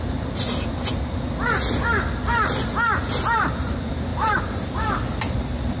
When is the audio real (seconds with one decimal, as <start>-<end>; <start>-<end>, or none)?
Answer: 0.0-4.1; 5.0-5.8